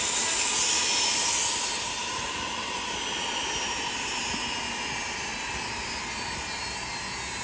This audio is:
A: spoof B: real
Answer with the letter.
B